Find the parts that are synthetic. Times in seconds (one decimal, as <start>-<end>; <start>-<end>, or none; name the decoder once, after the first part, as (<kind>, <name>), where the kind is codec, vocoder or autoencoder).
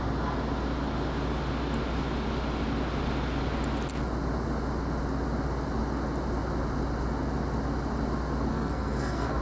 8.5-9.4 (codec, SNAC)